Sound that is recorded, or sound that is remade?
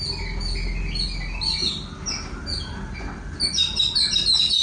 recorded